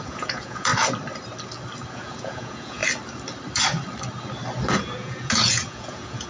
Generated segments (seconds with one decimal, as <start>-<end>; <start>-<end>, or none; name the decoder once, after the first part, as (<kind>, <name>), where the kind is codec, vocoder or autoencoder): 0.0-0.7 (vocoder, Vocos); 1.9-2.8; 4.8-6.3